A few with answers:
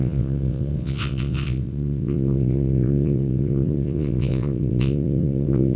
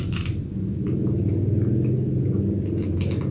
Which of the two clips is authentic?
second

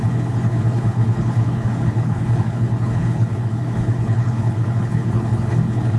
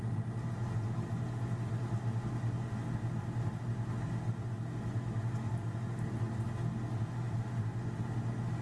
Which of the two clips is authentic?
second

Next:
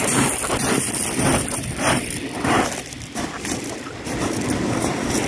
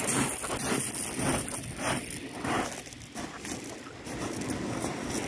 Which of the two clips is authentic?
second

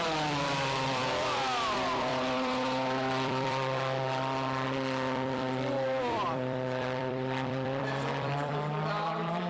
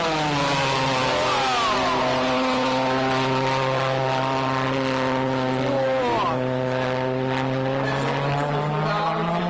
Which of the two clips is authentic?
second